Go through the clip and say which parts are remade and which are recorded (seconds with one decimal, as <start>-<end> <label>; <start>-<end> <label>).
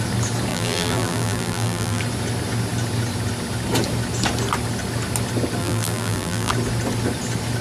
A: 0.0-0.5 recorded; 0.5-2.0 remade; 2.0-5.6 recorded; 5.6-6.5 remade; 6.5-7.6 recorded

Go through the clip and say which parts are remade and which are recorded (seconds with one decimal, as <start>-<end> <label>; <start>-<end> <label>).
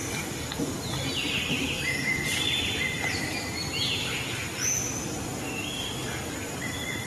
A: 0.0-2.3 remade; 2.3-6.6 recorded; 6.6-7.1 remade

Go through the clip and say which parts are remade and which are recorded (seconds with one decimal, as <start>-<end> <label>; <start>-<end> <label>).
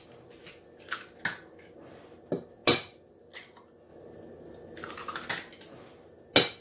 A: 0.0-6.6 recorded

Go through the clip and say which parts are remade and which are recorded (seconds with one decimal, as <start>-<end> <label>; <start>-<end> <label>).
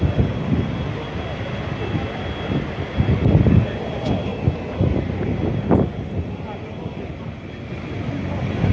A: 0.0-8.7 recorded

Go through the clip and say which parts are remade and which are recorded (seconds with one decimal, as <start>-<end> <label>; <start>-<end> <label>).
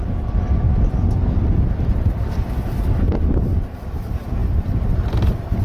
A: 0.0-3.4 recorded; 3.4-5.6 remade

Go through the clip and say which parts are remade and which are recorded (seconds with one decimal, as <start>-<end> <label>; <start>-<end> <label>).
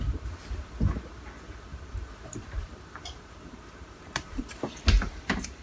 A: 0.0-1.7 recorded; 1.7-4.4 remade; 4.4-5.6 recorded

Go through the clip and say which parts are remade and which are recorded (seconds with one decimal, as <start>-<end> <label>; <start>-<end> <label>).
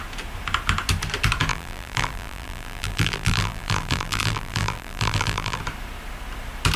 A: 0.0-1.5 recorded; 1.5-5.6 remade; 5.6-6.8 recorded